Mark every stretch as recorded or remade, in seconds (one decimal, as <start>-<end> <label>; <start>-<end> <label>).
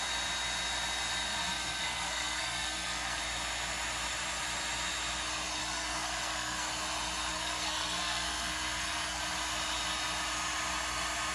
0.0-1.4 recorded; 1.4-3.2 remade; 3.2-5.6 recorded; 5.6-6.7 remade; 6.7-7.3 recorded; 7.3-9.2 remade; 9.2-11.3 recorded